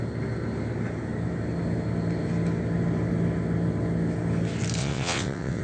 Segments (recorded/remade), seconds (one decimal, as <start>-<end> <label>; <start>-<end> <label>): 0.0-4.8 recorded; 4.8-5.6 remade